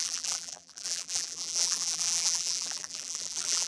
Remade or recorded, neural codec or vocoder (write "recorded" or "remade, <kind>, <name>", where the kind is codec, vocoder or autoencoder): remade, vocoder, BigVGAN v2